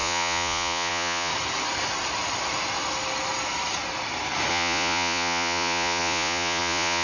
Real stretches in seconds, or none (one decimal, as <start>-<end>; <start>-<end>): 1.3-4.5